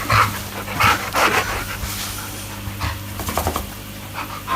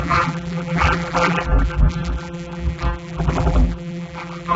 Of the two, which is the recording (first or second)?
first